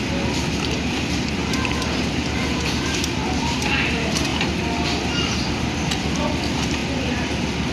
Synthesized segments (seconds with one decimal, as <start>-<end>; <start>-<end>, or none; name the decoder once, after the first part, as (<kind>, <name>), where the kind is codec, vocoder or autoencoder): 1.4-2.7 (vocoder, BigVGAN v2); 6.8-7.7